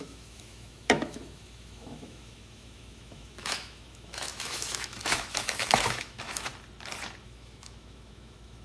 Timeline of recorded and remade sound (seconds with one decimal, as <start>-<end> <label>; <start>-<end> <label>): 0.0-6.5 remade; 6.5-7.2 recorded; 7.2-8.6 remade